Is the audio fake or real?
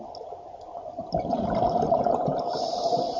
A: real